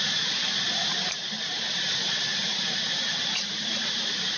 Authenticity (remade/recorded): remade